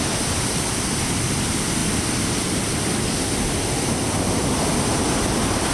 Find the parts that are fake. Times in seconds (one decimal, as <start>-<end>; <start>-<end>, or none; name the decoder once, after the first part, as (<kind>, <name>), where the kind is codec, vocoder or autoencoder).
none

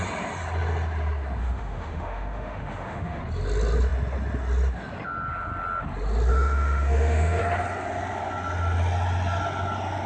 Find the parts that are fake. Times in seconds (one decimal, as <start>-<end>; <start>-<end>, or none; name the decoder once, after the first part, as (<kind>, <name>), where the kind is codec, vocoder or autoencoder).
1.4-3.2 (autoencoder, DAC-VAE); 6.3-7.4